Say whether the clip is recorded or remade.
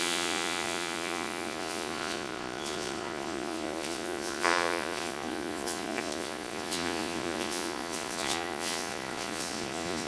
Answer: remade